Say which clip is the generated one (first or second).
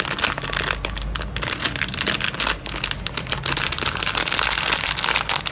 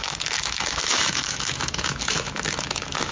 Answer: second